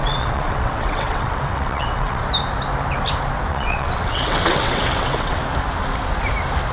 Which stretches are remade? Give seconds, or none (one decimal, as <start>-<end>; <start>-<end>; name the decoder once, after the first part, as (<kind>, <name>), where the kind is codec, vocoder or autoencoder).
0.0-2.2 (vocoder, WaveNeXt); 3.5-5.4

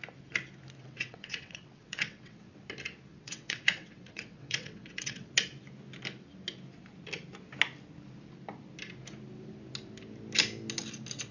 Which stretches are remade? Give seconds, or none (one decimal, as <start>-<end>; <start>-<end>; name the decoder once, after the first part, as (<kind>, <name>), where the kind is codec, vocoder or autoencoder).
0.8-2.6 (vocoder, WaveNeXt); 3.1-5.3

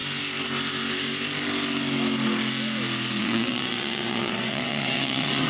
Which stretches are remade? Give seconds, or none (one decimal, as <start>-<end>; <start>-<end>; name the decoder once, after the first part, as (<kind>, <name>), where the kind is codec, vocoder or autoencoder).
3.2-5.5 (vocoder, WaveNeXt)

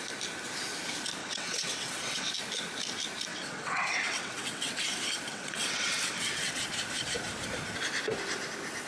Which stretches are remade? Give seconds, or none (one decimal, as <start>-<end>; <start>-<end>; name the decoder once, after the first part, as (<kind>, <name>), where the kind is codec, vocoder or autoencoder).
1.2-2.3 (vocoder, WaveNeXt); 3.3-4.7; 5.3-6.6

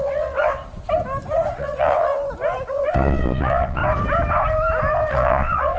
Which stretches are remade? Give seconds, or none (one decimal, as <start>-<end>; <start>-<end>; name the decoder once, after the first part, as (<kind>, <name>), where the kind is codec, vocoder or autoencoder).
0.0-0.6 (vocoder, WaveNeXt); 1.5-2.1; 2.7-3.8; 5.1-5.8

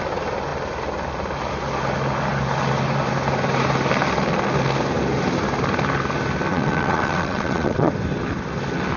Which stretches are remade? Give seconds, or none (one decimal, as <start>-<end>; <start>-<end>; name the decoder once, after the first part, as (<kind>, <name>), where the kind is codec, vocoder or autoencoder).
6.5-7.9 (vocoder, WaveNeXt)

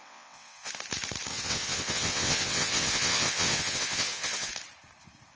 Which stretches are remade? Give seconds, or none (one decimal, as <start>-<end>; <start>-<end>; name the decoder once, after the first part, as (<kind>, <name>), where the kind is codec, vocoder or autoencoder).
0.0-0.7 (vocoder, WaveNeXt); 1.3-4.5